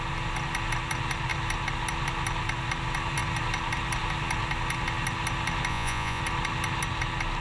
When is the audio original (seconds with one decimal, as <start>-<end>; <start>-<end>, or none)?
0.0-5.7; 6.2-7.4